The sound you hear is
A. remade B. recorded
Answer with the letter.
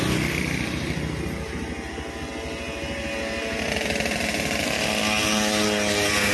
B